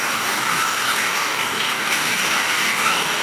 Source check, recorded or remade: remade